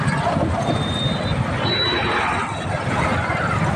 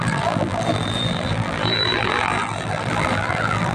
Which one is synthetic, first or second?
second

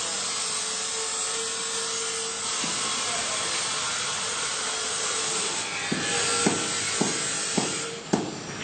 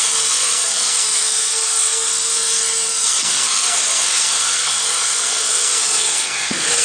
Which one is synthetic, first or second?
second